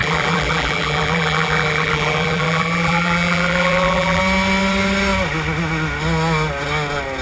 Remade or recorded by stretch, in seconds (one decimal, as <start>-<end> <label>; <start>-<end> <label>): 0.0-4.2 remade; 4.2-7.2 recorded